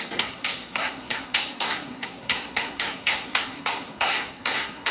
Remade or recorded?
remade